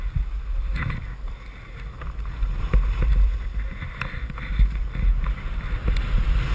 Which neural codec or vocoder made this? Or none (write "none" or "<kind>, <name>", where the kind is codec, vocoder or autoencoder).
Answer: none